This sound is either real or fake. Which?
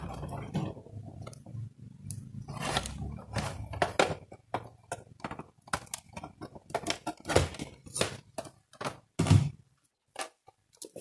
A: real